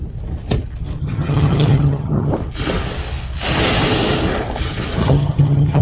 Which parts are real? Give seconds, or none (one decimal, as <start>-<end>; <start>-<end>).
0.0-1.0; 2.3-5.0